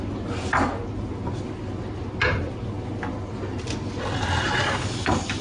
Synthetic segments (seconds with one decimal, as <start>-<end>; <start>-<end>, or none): none